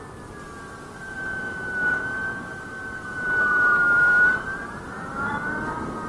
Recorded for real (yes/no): yes